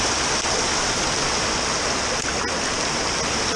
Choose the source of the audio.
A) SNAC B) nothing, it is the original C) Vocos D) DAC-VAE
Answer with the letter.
B